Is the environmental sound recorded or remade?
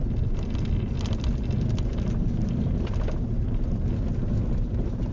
recorded